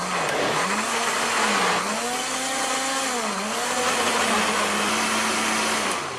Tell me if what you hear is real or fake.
real